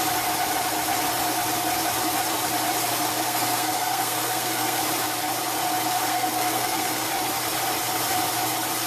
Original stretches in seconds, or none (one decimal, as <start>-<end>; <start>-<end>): 0.0-3.1; 4.8-6.1; 7.1-8.9